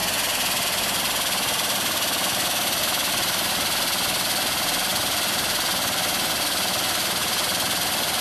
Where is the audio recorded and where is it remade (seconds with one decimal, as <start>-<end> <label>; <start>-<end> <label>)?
0.0-3.1 recorded; 3.1-8.2 remade